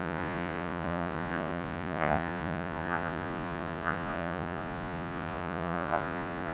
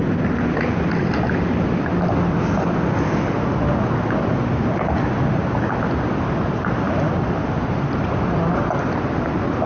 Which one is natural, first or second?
second